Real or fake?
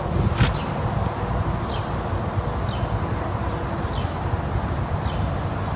real